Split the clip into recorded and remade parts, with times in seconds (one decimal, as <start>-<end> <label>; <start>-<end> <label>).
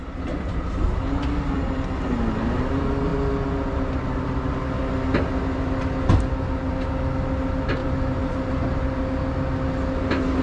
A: 0.0-7.8 recorded; 7.8-8.8 remade; 8.8-10.4 recorded